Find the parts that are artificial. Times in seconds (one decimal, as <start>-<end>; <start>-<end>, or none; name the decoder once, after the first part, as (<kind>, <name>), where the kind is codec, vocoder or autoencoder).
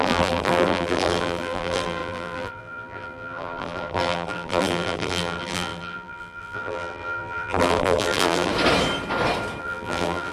0.0-8.5 (vocoder, BigVGAN v2); 9.6-10.3